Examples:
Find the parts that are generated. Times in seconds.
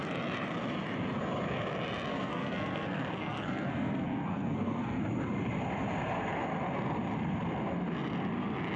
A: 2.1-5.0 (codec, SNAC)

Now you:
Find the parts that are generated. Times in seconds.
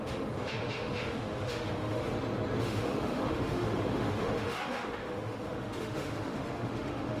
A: 0.0-2.0 (autoencoder, DAC-VAE); 2.6-7.2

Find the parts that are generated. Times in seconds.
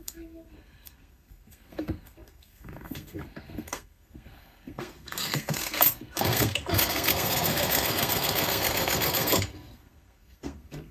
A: 0.0-10.9 (codec, SNAC)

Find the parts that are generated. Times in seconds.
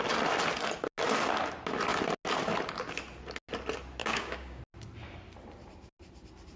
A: 4.0-4.6 (codec, DAC)